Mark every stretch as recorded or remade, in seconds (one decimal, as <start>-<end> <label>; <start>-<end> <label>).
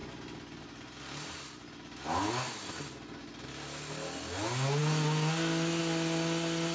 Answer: 0.0-6.7 recorded